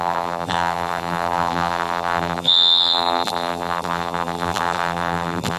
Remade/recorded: remade